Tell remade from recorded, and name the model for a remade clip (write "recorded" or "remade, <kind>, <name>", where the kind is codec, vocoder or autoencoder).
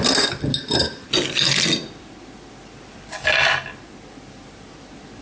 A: recorded